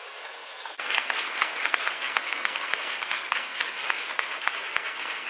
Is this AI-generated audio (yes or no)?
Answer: yes